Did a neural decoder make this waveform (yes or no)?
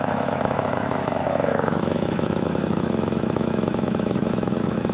yes